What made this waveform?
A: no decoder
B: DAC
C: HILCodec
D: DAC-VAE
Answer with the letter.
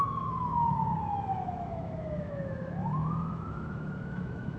D